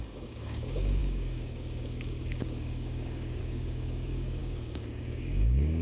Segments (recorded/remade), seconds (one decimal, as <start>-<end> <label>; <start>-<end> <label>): 0.0-5.8 remade